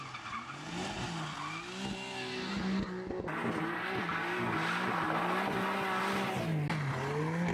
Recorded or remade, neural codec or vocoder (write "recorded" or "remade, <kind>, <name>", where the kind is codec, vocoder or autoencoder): recorded